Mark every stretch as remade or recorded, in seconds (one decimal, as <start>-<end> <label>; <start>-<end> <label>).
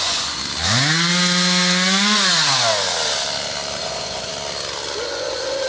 0.0-0.4 remade; 0.4-3.8 recorded; 3.8-4.3 remade; 4.3-5.0 recorded; 5.0-5.7 remade